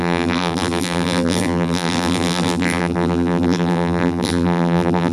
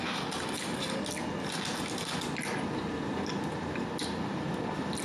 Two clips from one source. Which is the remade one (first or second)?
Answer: first